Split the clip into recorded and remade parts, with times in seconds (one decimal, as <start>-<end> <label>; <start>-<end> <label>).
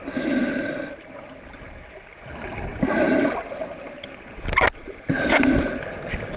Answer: 0.0-6.4 recorded